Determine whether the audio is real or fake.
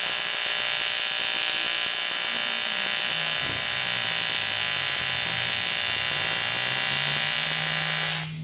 real